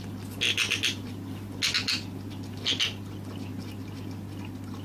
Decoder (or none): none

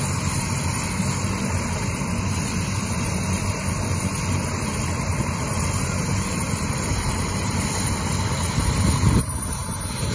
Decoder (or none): vocoder, BigVGAN v2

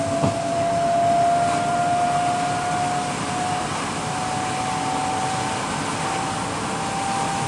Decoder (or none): none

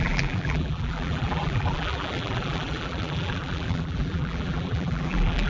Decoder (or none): vocoder, BigVGAN v2